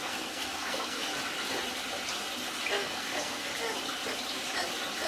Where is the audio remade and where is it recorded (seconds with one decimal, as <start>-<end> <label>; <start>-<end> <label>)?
0.0-1.1 remade; 1.1-2.7 recorded; 2.7-3.5 remade; 3.5-5.1 recorded